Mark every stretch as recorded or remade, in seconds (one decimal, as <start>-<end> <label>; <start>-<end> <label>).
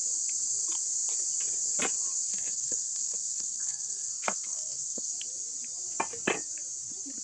0.0-2.3 recorded; 2.3-5.1 remade; 5.1-7.2 recorded